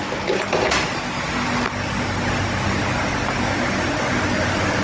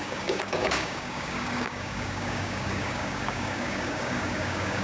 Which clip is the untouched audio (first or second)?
first